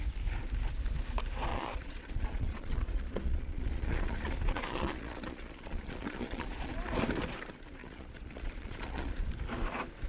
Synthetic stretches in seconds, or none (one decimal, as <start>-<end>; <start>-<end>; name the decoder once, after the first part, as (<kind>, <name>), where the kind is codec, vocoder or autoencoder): 1.5-6.7 (vocoder, Vocos); 7.8-9.3